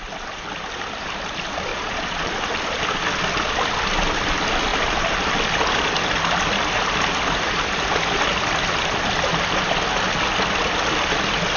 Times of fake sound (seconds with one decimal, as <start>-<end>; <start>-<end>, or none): 1.7-2.3